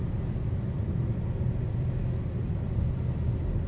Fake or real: real